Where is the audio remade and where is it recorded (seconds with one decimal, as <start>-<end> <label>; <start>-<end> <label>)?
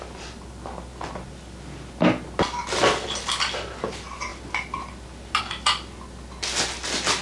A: 0.0-7.2 recorded